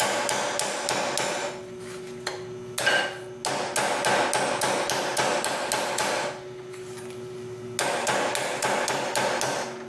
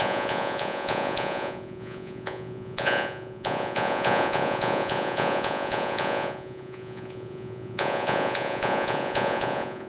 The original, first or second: first